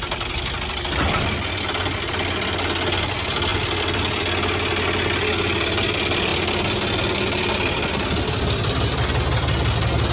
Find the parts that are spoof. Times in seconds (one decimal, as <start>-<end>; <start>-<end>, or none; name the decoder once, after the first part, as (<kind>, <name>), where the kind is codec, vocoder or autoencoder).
3.5-4.2 (vocoder, BigVGAN v2)